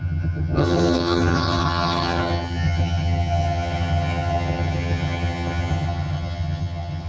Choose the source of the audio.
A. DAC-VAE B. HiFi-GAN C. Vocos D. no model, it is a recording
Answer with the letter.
B